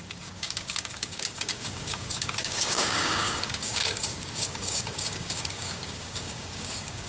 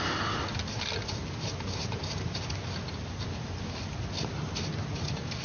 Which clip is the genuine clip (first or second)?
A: second